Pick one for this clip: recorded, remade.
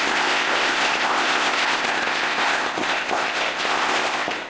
remade